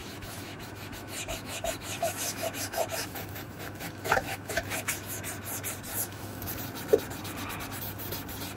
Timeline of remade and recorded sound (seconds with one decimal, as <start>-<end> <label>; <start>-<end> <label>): 0.0-5.2 remade; 5.2-5.9 recorded; 5.9-6.5 remade; 6.5-8.6 recorded